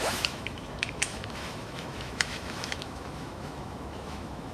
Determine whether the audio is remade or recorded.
remade